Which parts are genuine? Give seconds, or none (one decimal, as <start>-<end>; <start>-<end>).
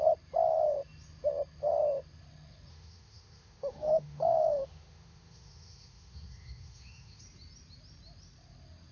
0.0-2.7; 7.2-8.9